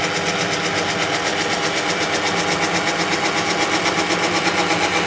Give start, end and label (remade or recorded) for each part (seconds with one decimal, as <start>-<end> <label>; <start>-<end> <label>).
0.0-5.1 recorded